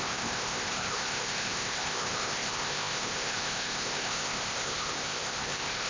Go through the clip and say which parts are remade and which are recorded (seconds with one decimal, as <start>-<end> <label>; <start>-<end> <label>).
0.0-5.9 remade